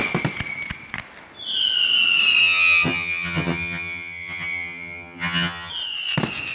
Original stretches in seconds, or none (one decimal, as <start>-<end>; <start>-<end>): 0.0-2.4; 5.7-6.5